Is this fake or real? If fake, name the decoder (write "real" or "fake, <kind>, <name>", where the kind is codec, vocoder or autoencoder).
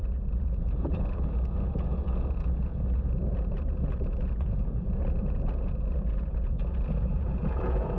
fake, vocoder, Vocos